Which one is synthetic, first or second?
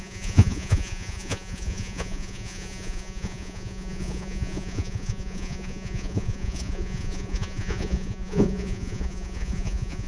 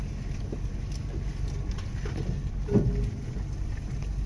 first